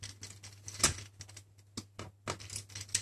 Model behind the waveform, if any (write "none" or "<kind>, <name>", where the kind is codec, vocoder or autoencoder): none